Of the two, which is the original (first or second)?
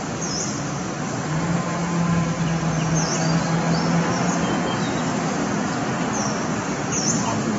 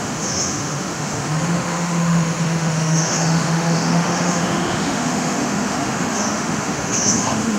first